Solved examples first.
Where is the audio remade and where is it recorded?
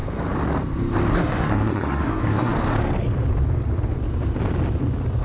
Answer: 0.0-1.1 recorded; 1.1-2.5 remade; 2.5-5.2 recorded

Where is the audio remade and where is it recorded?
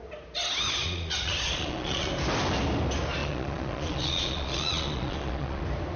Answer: 0.0-0.8 recorded; 0.8-2.1 remade; 2.1-3.2 recorded; 3.2-5.6 remade; 5.6-6.0 recorded